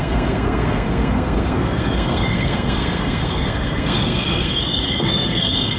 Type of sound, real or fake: fake